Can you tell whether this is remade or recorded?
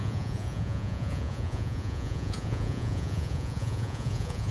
remade